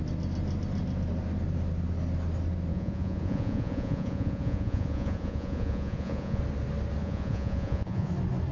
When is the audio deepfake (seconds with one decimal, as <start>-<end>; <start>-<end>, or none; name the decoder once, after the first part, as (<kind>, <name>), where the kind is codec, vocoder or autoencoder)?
2.7-6.4 (vocoder, Vocos); 7.0-8.1